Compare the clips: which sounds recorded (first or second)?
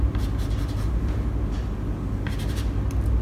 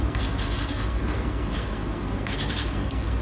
first